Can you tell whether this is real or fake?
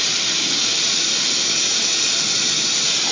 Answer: real